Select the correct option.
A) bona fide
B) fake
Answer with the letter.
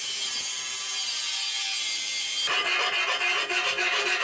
A